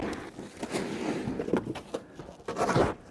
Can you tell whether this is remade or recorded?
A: recorded